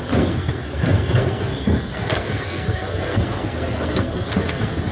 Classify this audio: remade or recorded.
remade